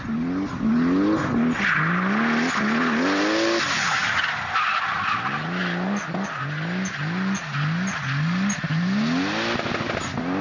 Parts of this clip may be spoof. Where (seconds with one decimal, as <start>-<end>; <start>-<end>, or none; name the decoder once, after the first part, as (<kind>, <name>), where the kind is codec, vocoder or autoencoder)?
none